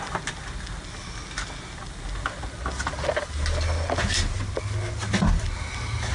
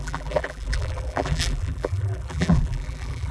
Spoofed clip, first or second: second